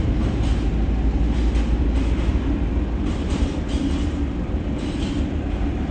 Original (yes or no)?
yes